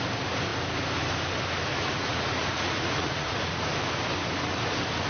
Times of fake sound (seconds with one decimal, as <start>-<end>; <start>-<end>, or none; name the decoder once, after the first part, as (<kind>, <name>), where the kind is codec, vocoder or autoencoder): 1.7-3.7 (vocoder, Vocos)